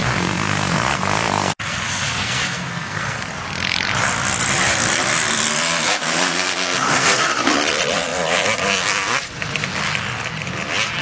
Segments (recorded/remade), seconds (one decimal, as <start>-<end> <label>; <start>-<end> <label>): 0.0-3.3 remade; 3.3-6.0 recorded; 6.0-7.2 remade; 7.2-11.0 recorded